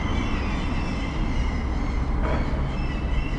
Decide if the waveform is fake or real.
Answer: real